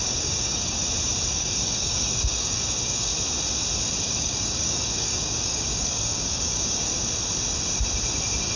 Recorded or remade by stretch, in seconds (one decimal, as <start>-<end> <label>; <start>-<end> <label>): 0.0-0.8 remade; 0.8-1.3 recorded; 1.3-3.1 remade; 3.1-4.0 recorded; 4.0-6.9 remade; 6.9-8.6 recorded